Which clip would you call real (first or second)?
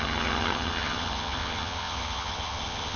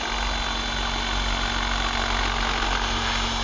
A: second